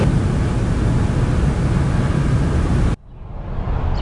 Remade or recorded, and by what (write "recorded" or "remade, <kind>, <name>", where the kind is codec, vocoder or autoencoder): recorded